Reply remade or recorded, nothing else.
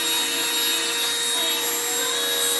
recorded